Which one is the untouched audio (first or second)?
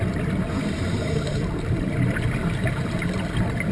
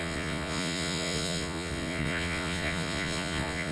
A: first